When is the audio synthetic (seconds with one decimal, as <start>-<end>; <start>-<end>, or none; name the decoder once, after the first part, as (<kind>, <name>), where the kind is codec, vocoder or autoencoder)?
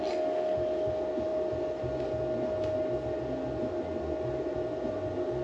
none